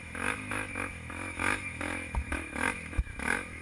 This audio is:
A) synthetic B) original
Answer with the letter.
A